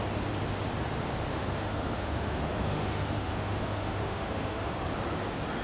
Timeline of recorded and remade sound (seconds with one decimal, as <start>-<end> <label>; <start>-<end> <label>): 0.0-1.3 recorded; 1.3-4.7 remade; 4.7-5.6 recorded